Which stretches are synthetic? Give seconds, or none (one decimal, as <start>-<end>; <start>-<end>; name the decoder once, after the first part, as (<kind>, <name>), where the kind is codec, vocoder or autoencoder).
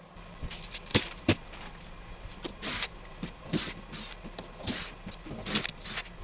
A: 0.9-3.6 (vocoder, BigVGAN v2)